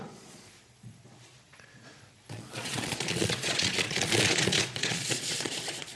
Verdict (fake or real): fake